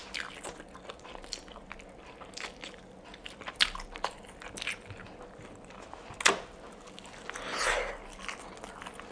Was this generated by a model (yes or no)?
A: no